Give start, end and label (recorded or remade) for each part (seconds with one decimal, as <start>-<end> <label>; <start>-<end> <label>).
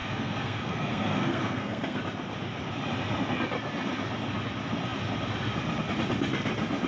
0.0-2.0 remade; 2.0-6.9 recorded